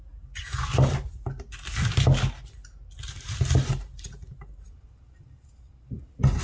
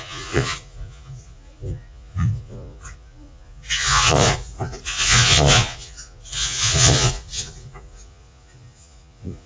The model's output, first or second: second